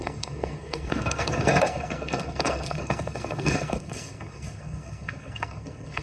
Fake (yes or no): yes